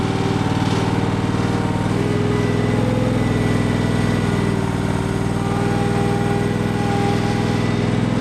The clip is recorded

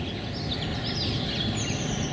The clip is recorded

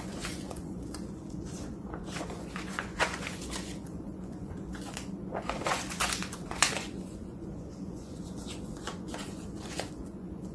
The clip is remade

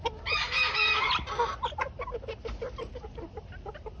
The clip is recorded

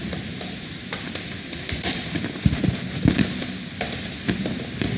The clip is recorded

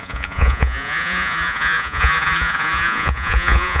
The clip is remade